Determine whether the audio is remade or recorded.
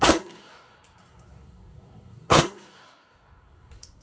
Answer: remade